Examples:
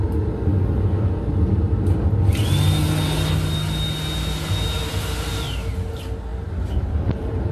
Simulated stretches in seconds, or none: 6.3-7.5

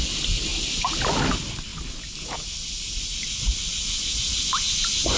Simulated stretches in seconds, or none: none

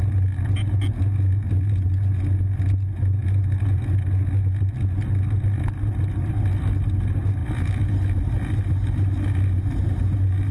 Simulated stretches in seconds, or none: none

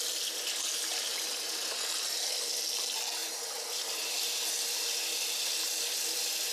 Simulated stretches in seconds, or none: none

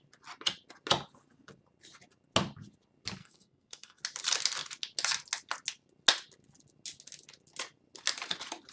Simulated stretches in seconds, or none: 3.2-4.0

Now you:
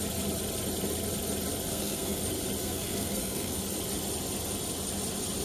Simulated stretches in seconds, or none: 1.7-2.2; 2.6-3.6

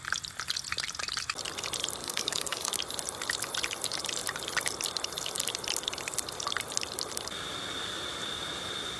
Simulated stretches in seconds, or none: 2.0-2.7